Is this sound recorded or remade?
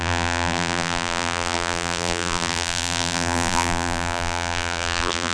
remade